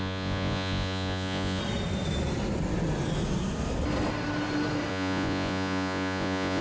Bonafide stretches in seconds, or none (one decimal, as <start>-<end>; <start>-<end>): 1.6-4.9